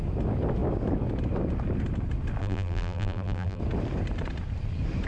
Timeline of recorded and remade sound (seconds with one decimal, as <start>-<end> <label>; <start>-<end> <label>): 0.0-2.4 recorded; 2.4-3.6 remade; 3.6-5.1 recorded